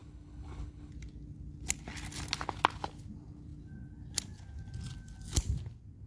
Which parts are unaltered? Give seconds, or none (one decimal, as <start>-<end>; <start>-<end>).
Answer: 0.9-6.1